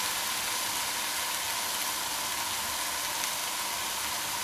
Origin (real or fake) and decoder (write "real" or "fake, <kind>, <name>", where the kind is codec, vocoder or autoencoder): real